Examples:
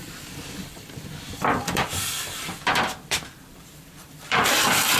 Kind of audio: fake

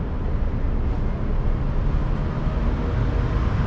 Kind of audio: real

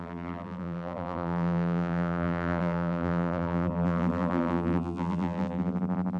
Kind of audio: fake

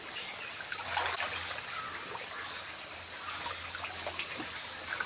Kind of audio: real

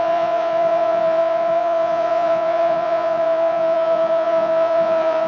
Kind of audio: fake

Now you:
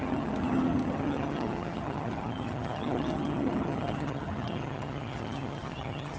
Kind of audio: fake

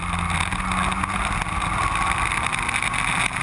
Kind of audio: real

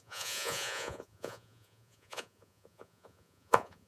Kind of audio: fake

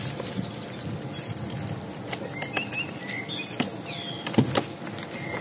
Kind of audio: real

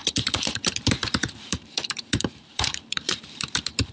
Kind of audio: fake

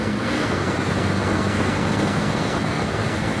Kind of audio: fake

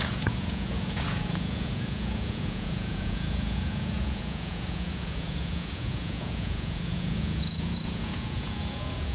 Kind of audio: fake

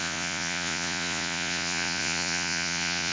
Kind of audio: fake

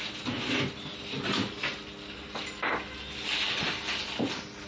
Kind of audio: real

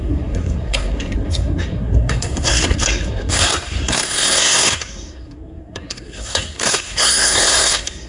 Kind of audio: fake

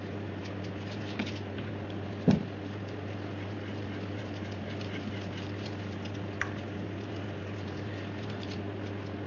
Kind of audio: real